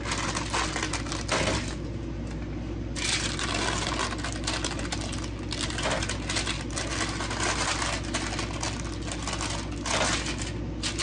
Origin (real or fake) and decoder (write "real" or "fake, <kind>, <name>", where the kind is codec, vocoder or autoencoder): real